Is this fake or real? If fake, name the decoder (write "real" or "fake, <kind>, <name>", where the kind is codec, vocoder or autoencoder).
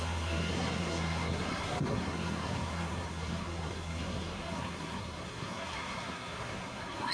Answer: fake, codec, SNAC